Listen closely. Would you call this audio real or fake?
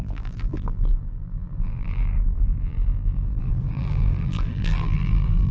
fake